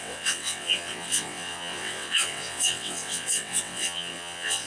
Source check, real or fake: fake